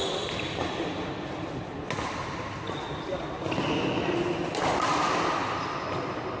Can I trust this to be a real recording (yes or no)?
yes